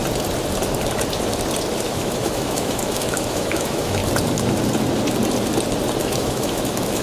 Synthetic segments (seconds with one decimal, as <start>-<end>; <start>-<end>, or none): 1.8-4.0; 6.0-7.0

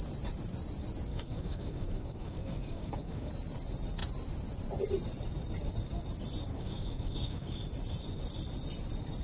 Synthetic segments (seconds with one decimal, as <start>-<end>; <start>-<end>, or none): 1.1-3.3; 6.5-7.6

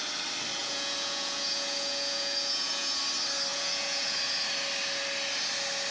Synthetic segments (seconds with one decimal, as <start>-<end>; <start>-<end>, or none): 0.6-3.0; 3.5-4.2

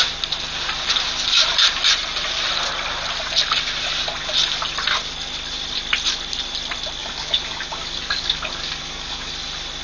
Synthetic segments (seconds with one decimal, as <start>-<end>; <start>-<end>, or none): 7.0-9.3

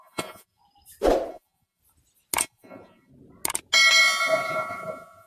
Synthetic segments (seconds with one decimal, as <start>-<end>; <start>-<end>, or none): 0.0-0.6; 1.3-1.8; 2.4-3.1; 4.0-5.3